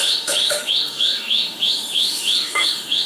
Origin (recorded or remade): remade